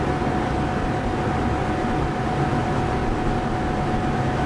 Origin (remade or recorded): recorded